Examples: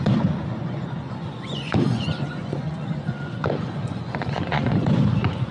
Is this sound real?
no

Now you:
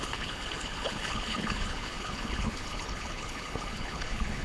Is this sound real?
no